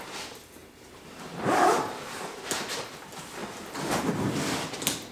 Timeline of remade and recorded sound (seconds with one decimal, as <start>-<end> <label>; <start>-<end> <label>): 0.0-0.6 recorded; 0.6-2.4 remade; 2.4-5.1 recorded